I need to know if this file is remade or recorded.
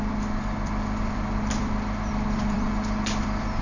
remade